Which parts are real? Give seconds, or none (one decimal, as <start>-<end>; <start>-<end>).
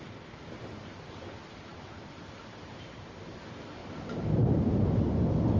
0.0-1.7; 3.4-3.8; 5.1-5.6